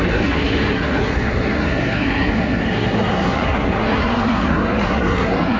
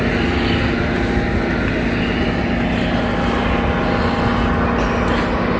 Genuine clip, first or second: second